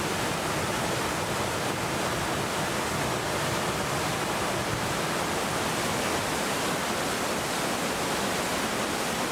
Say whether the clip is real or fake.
real